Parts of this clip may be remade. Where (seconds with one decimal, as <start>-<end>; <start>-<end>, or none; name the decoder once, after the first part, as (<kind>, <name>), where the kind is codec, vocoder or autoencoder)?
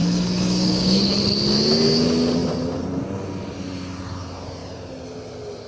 0.0-1.1 (codec, DAC)